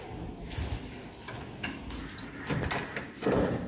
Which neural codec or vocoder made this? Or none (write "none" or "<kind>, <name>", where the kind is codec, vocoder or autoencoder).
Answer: none